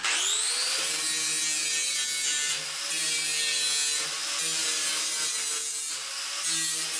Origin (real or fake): real